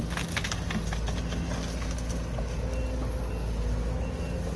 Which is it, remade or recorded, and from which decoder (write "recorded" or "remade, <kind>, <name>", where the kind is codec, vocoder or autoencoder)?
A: recorded